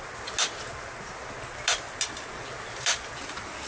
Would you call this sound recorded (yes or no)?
yes